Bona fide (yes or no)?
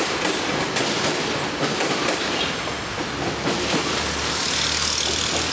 yes